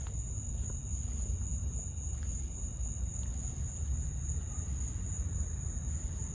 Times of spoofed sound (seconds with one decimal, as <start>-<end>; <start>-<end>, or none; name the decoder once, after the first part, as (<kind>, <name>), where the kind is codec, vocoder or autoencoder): none